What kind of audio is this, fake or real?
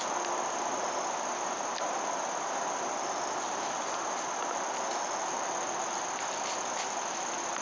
real